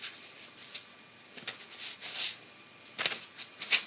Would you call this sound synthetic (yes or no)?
no